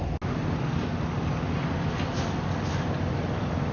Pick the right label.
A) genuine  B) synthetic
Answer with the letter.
A